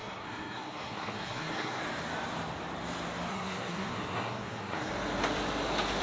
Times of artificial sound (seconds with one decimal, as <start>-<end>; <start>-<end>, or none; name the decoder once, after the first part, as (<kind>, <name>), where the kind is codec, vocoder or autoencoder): 0.0-1.8 (codec, SNAC); 3.3-4.9